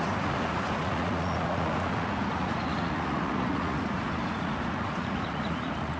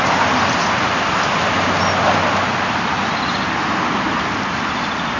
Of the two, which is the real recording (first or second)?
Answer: second